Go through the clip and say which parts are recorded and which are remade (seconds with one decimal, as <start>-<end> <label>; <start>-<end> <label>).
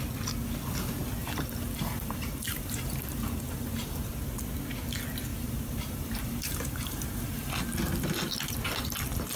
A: 0.0-1.2 recorded; 1.2-4.1 remade; 4.1-5.3 recorded; 5.3-7.5 remade; 7.5-9.4 recorded